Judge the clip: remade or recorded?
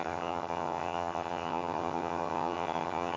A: remade